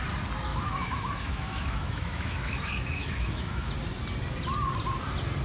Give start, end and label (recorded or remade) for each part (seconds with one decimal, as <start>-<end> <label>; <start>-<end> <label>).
0.0-0.5 recorded; 0.5-3.7 remade; 3.7-5.4 recorded